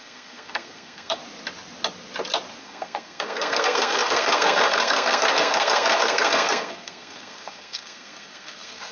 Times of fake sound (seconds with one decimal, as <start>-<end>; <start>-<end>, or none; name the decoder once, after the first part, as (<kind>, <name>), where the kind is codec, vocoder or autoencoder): 0.0-1.2 (codec, SNAC); 2.6-8.9